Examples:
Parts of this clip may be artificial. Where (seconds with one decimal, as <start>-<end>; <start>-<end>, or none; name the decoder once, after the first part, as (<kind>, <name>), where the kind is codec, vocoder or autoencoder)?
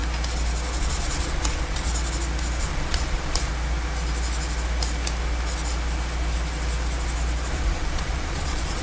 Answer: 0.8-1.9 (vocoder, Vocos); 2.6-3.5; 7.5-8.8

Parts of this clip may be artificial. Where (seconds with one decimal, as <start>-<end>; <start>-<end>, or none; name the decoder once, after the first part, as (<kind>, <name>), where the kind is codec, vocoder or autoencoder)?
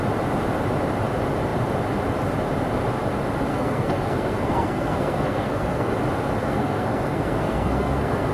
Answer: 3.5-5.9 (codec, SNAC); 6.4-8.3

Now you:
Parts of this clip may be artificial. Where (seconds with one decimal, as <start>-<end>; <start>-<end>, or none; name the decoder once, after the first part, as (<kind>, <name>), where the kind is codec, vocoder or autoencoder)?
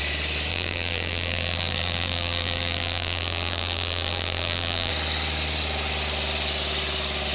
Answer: 0.5-4.9 (vocoder, BigVGAN v2)